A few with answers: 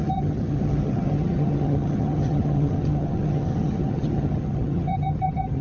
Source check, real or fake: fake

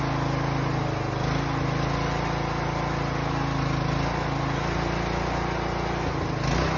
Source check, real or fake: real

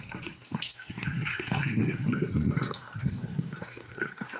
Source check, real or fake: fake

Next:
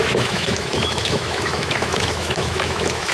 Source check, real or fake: fake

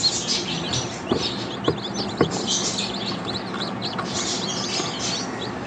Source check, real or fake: real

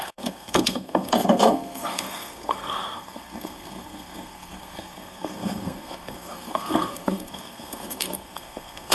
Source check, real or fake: fake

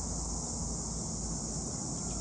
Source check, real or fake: real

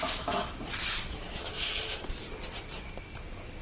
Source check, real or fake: real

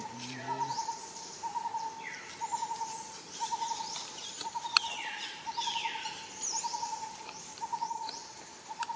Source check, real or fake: fake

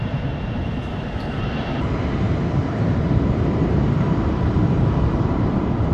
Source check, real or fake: fake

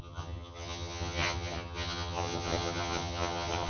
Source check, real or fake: fake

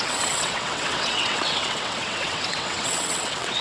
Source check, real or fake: fake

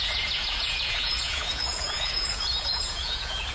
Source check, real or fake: fake